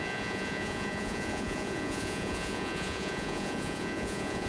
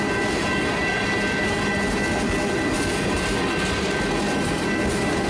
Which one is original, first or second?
second